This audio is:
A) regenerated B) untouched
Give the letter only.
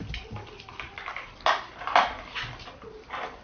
B